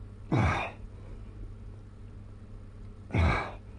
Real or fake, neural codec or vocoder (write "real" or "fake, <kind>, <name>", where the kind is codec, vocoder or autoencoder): real